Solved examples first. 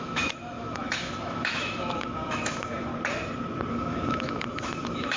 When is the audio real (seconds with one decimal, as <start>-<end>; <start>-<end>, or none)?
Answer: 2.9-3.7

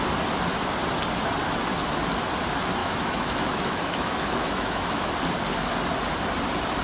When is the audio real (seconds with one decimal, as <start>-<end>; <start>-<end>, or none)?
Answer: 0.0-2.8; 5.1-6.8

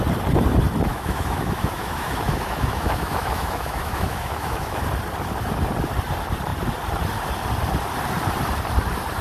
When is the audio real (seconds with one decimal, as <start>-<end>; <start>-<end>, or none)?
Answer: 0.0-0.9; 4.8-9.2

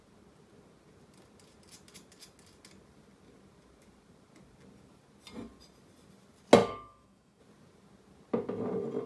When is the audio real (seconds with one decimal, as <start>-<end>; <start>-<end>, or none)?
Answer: 0.0-6.6; 7.4-9.1